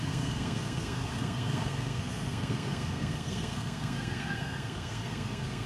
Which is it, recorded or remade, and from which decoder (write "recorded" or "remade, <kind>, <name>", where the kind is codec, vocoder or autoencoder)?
remade, codec, SNAC